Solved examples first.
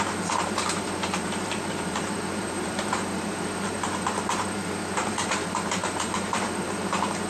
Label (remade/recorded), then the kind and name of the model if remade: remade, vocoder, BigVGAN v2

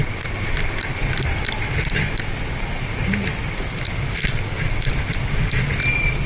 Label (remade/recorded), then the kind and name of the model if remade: recorded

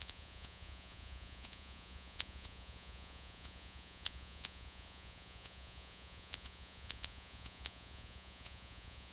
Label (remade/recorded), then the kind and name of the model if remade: remade, vocoder, Vocos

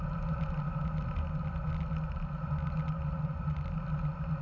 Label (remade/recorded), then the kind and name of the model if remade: recorded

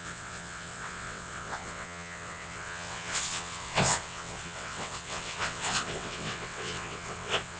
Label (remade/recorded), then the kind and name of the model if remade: remade, vocoder, WaveNeXt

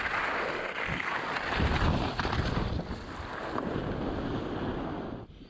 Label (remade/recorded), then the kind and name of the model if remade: recorded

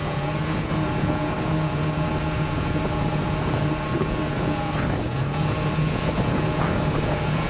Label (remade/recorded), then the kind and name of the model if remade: remade, vocoder, Vocos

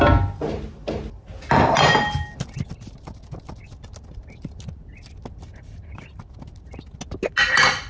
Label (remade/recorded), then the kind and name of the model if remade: recorded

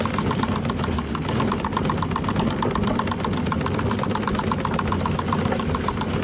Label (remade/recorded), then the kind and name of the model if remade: recorded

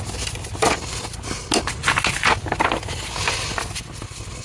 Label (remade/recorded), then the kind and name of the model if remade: recorded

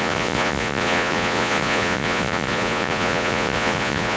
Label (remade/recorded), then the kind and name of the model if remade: remade, vocoder, Vocos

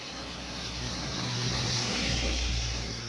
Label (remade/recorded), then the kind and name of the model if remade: remade, codec, SNAC